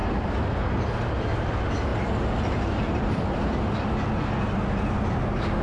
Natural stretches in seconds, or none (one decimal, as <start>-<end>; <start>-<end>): 0.0-5.6